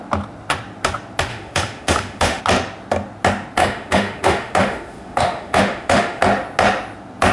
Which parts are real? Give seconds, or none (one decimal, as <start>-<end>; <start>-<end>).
0.0-1.3; 2.4-3.6; 6.2-7.3